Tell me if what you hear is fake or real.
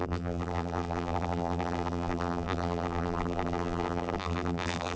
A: fake